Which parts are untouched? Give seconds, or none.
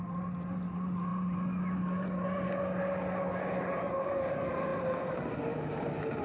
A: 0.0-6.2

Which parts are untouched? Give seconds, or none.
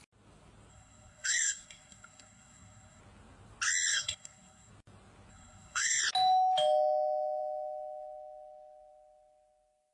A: 0.0-0.7; 3.0-3.9; 4.7-5.3; 6.0-9.9